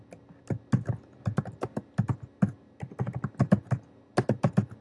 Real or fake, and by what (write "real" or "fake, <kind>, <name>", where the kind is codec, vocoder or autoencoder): real